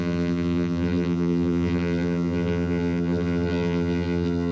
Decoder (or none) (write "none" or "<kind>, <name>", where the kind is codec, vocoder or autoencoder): vocoder, BigVGAN v2